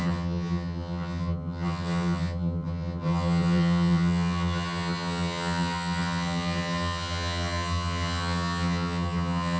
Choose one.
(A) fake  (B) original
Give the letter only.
A